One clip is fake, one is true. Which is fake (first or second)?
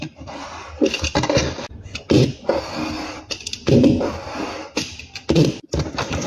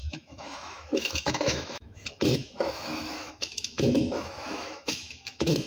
second